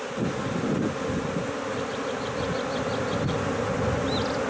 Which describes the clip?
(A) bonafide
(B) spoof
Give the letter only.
A